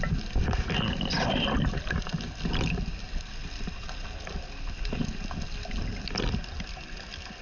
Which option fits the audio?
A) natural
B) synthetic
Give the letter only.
A